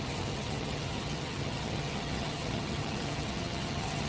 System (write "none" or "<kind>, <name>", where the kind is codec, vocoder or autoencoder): vocoder, HiFi-GAN